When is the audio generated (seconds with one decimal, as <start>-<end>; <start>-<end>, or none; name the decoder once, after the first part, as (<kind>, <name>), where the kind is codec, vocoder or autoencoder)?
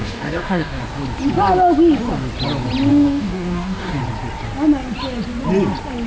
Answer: 0.0-0.8 (codec, DAC); 2.9-4.0